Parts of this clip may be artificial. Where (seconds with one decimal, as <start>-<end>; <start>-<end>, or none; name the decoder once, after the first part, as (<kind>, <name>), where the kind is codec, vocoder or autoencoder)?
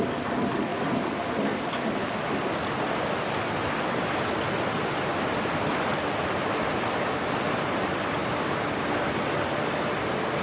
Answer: none